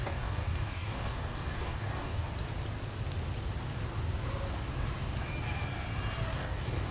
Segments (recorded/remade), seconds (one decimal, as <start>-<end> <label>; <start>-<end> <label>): 0.0-2.3 remade; 2.3-6.2 recorded; 6.2-6.9 remade

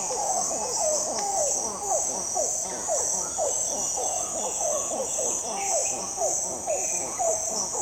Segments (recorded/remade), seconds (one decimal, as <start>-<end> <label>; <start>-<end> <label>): 0.0-7.8 remade

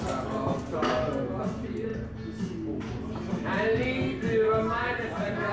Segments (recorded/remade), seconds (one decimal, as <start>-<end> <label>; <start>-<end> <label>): 0.0-5.5 recorded

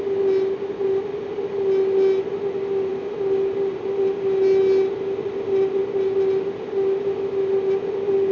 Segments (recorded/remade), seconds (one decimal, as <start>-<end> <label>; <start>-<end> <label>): 0.0-8.3 recorded

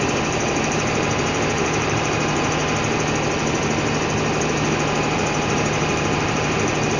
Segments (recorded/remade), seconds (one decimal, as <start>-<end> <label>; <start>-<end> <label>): 0.0-2.6 remade; 2.6-4.7 recorded; 4.7-7.0 remade

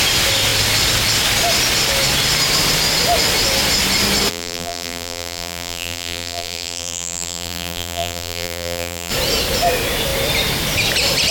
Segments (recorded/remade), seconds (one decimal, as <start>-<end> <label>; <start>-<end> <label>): 0.0-4.3 recorded; 4.3-9.1 remade; 9.1-11.3 recorded

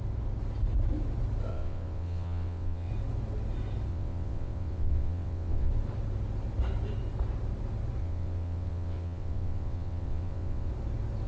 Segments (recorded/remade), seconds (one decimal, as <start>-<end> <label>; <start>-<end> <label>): 0.0-1.5 recorded; 1.5-2.9 remade; 2.9-3.9 recorded; 3.9-5.7 remade; 5.7-8.0 recorded; 8.0-10.7 remade; 10.7-11.3 recorded

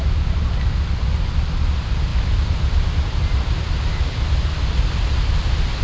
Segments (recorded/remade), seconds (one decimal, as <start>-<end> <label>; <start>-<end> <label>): 0.0-2.1 recorded; 2.1-4.4 remade; 4.4-5.8 recorded